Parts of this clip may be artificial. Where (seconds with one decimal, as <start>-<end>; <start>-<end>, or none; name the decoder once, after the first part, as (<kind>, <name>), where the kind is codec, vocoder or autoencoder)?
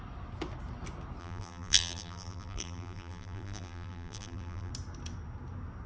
1.2-4.7 (vocoder, BigVGAN v2)